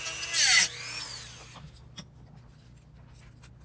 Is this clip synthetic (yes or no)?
no